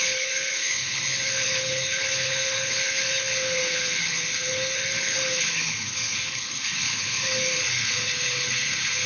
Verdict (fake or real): fake